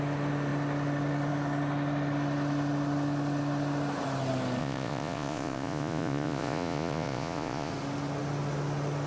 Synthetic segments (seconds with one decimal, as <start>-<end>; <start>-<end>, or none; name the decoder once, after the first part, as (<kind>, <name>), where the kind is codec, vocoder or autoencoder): 4.6-7.7 (vocoder, Vocos)